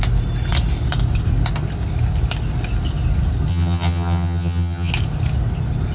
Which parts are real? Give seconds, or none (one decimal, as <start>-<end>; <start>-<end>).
0.0-3.5; 4.9-5.9